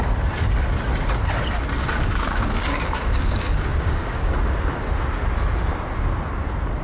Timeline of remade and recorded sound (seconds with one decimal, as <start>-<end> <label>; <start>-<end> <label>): 0.0-1.8 recorded; 1.8-4.5 remade; 4.5-6.8 recorded